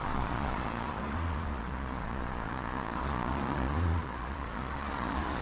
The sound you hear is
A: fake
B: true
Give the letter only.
A